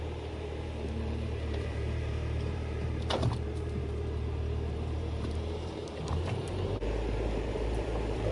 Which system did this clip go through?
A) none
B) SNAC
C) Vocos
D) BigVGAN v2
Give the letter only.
D